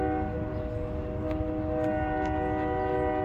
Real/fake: real